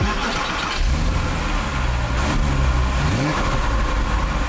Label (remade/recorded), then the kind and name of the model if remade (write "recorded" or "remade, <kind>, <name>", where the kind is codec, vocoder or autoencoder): recorded